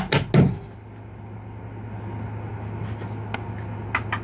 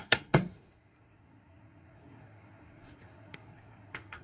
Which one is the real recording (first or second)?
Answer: first